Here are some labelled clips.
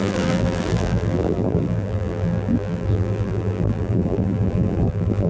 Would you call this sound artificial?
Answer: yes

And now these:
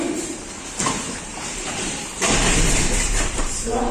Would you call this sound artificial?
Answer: yes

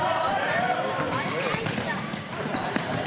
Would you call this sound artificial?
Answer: yes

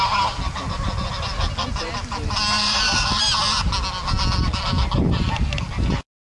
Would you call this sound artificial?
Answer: no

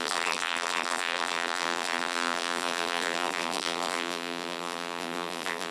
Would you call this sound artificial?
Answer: yes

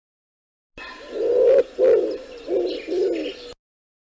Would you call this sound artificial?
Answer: no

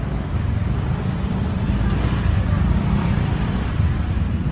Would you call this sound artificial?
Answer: no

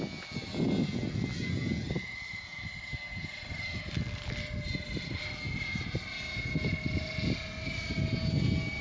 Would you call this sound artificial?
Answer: no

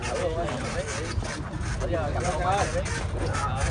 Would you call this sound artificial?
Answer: no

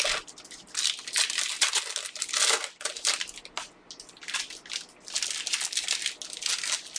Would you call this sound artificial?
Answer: no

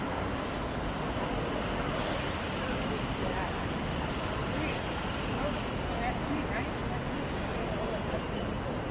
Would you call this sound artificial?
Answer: no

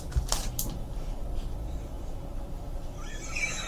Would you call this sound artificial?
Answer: yes